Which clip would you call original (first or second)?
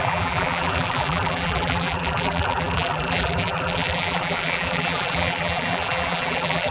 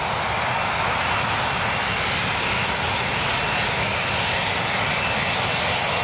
second